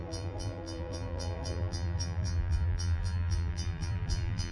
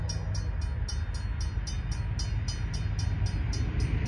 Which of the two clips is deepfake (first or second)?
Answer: first